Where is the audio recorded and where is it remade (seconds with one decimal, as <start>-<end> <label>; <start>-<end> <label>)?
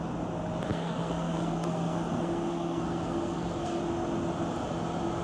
0.0-0.7 recorded; 0.7-3.8 remade; 3.8-5.2 recorded